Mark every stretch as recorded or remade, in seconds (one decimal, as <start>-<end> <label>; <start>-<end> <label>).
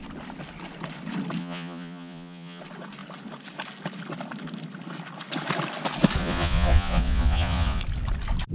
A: 0.0-1.4 recorded; 1.4-2.6 remade; 2.6-6.2 recorded; 6.2-7.8 remade; 7.8-8.5 recorded